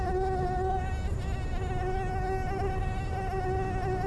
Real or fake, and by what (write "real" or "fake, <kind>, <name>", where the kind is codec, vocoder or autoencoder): real